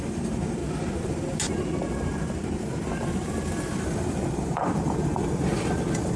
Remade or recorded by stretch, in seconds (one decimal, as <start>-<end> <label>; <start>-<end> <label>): 0.0-0.6 remade; 0.6-3.7 recorded; 3.7-6.2 remade